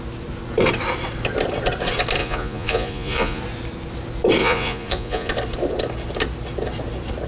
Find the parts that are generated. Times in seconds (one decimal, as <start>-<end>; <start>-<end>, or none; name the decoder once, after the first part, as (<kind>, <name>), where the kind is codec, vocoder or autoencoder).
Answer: 2.2-3.4 (vocoder, Vocos); 4.4-5.3